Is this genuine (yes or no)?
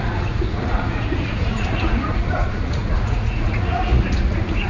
no